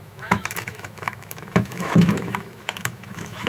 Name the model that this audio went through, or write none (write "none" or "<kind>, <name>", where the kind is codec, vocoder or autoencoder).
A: autoencoder, DAC-VAE